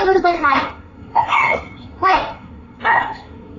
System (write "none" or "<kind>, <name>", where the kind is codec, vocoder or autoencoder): codec, SNAC